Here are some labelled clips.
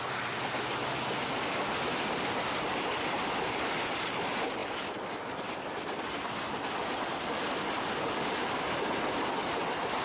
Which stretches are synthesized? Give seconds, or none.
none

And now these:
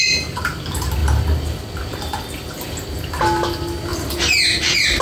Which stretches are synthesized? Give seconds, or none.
3.9-5.0 (vocoder, BigVGAN v2)

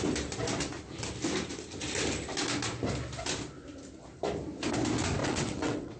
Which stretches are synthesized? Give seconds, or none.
5.2-6.0 (vocoder, WaveNeXt)

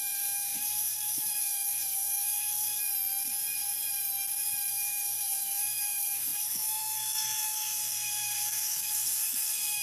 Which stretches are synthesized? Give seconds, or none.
0.0-2.8 (codec, SNAC); 4.7-9.8

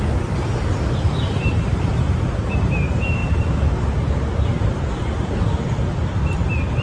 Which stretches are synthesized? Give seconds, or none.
none

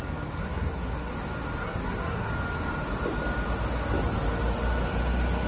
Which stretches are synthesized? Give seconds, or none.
0.4-1.1 (codec, SNAC); 1.6-2.3

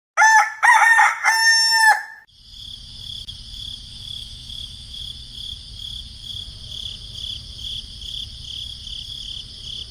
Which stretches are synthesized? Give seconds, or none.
3.9-5.0 (autoencoder, DAC-VAE)